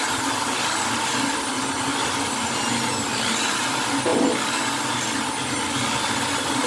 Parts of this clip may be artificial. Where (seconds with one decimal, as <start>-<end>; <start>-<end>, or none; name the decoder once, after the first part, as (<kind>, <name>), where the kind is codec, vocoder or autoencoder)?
none